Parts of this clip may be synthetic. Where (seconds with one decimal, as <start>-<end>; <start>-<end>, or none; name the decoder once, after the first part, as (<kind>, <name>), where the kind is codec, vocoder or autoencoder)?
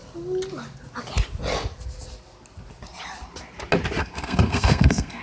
4.0-5.2 (codec, SNAC)